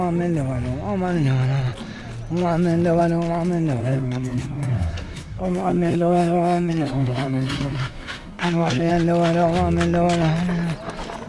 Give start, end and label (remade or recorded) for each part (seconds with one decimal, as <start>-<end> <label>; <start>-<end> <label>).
0.0-3.8 recorded; 3.8-8.9 remade; 8.9-11.3 recorded